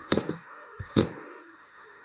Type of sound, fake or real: fake